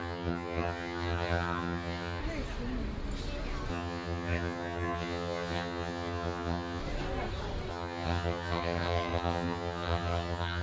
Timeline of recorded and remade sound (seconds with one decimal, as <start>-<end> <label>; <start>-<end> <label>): 0.0-2.2 remade; 2.2-3.7 recorded; 3.7-6.8 remade; 6.8-7.7 recorded; 7.7-10.6 remade

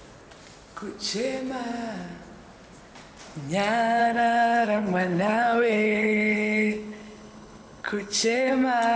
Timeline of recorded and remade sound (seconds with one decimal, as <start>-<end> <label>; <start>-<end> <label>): 0.0-4.0 recorded; 4.0-8.5 remade; 8.5-9.0 recorded

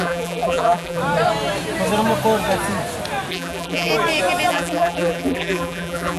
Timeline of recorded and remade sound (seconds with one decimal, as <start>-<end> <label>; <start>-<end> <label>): 0.0-1.0 remade; 1.0-3.3 recorded; 3.3-3.9 remade; 3.9-4.5 recorded; 4.5-6.2 remade

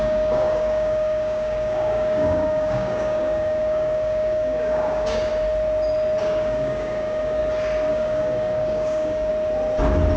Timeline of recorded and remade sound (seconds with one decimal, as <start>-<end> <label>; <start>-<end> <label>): 0.0-5.3 remade; 5.3-6.2 recorded; 6.2-7.4 remade; 7.4-7.9 recorded; 7.9-9.3 remade; 9.3-10.2 recorded

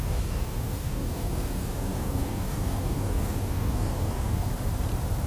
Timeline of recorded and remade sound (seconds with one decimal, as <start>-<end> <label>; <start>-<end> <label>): 0.0-4.5 remade; 4.5-5.3 recorded

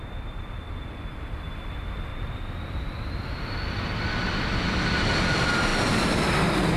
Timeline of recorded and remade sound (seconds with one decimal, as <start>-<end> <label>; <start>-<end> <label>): 0.0-2.1 recorded; 2.1-3.4 remade; 3.4-6.8 recorded

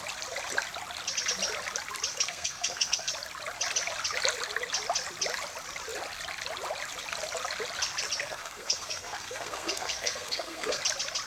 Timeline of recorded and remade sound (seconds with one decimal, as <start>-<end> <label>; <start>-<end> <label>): 0.0-2.1 recorded; 2.1-3.1 remade; 3.1-8.2 recorded; 8.2-10.8 remade; 10.8-11.3 recorded

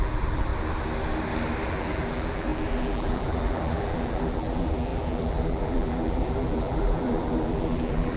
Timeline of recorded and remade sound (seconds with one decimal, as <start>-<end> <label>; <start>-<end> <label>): 0.0-0.5 remade; 0.5-1.7 recorded; 1.7-8.2 remade